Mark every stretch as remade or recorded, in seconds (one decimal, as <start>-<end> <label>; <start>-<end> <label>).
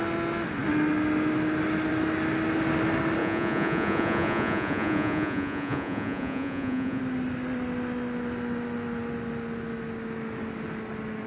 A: 0.0-3.2 recorded; 3.2-7.0 remade; 7.0-11.3 recorded